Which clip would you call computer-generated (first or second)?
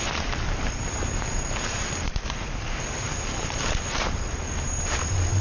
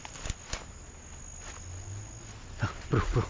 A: first